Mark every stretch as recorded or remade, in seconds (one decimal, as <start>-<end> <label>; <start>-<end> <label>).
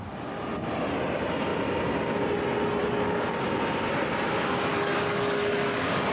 0.0-2.8 recorded; 2.8-3.3 remade; 3.3-4.7 recorded; 4.7-6.1 remade